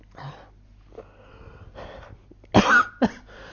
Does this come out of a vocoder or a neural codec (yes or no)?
no